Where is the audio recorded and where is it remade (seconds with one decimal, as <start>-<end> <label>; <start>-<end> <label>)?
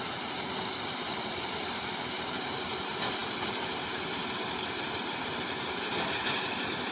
0.0-6.9 recorded